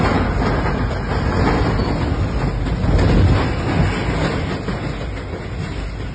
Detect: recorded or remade recorded